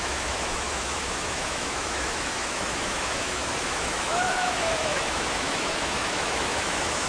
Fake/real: fake